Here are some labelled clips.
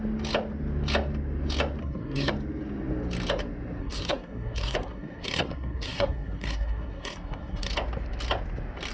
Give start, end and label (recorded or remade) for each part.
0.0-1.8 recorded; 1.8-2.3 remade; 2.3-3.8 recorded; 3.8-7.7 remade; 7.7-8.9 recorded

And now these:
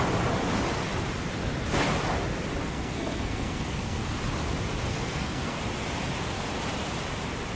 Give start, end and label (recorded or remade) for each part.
0.0-2.6 recorded; 2.6-4.2 remade; 4.2-4.9 recorded; 4.9-5.6 remade; 5.6-7.6 recorded

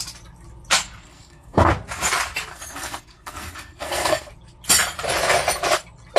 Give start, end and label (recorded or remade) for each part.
0.0-1.0 recorded; 1.0-1.7 remade; 1.7-2.5 recorded; 2.5-4.3 remade; 4.3-6.2 recorded

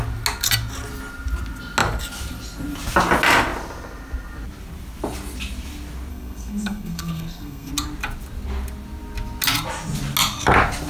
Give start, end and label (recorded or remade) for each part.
0.0-6.1 recorded; 6.1-7.7 remade; 7.7-10.9 recorded

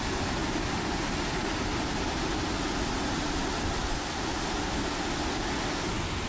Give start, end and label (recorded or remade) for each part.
0.0-6.3 recorded